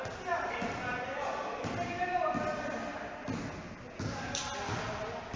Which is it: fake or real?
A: real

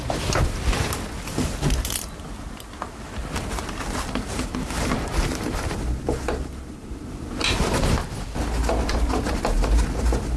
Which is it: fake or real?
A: real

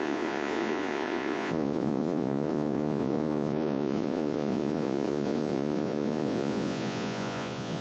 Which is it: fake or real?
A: fake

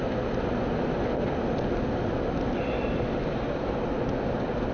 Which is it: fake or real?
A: real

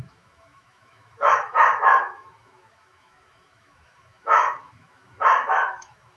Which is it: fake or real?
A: fake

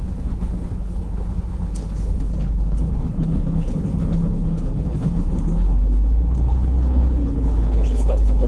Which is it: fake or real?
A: fake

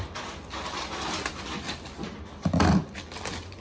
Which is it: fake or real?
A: real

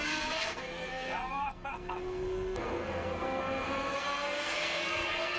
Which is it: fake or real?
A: fake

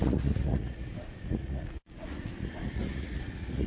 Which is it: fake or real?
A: fake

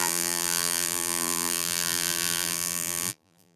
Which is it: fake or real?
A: fake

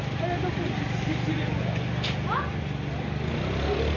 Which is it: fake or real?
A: real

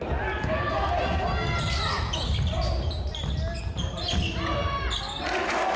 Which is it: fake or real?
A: real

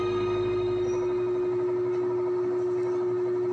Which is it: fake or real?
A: real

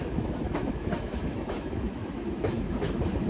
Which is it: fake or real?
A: fake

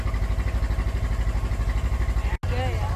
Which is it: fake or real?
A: real